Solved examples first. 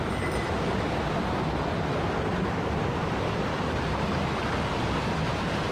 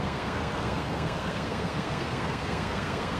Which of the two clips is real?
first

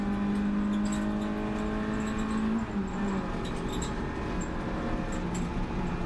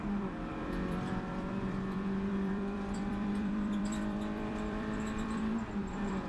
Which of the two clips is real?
first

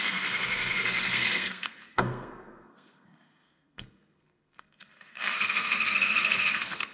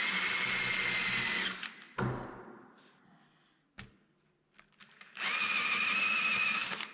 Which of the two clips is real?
second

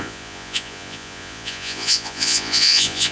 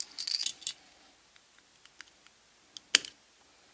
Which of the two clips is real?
second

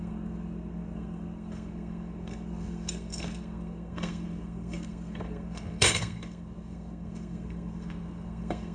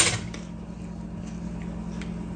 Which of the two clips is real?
second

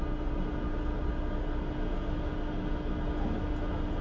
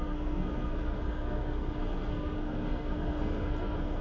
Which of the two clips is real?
first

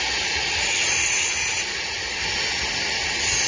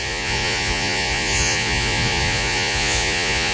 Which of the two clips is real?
first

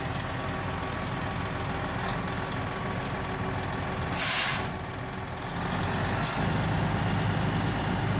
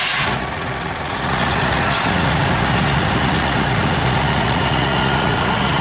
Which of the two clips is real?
first